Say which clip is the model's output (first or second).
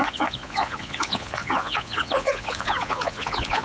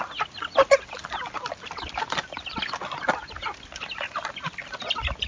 first